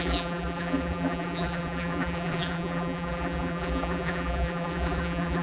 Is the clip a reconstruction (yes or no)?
yes